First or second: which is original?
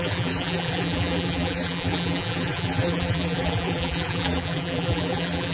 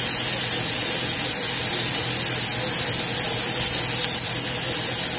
second